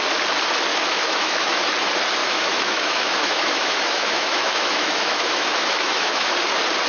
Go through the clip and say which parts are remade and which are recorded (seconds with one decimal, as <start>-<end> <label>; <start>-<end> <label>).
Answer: 0.0-0.7 recorded; 0.7-1.6 remade; 1.6-2.2 recorded; 2.2-6.3 remade; 6.3-6.9 recorded